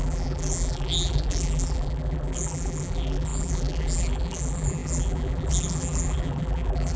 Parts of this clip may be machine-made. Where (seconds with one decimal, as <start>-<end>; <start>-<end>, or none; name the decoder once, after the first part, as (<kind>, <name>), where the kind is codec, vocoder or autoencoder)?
0.0-7.0 (vocoder, BigVGAN v2)